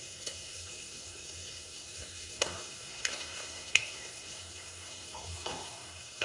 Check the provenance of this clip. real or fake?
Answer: fake